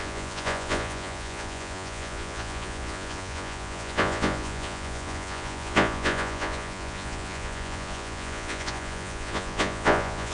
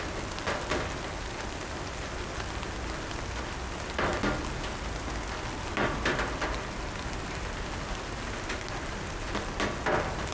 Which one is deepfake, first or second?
first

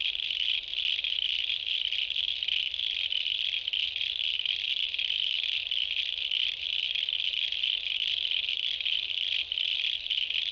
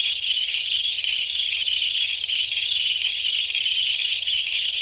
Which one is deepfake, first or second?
second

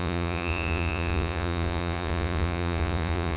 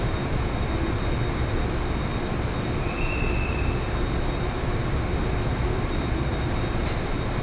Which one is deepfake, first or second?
first